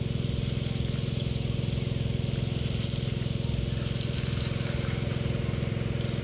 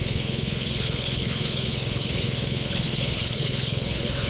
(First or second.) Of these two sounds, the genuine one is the first